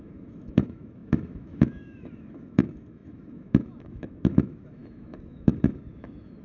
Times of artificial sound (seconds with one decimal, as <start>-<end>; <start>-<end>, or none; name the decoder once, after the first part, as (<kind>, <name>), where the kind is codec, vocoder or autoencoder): 0.0-6.4 (autoencoder, DAC-VAE)